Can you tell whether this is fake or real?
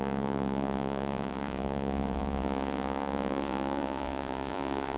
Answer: fake